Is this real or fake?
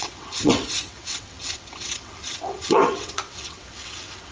fake